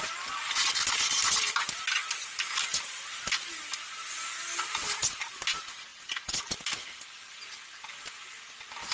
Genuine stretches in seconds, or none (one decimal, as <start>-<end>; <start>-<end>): 0.0-8.9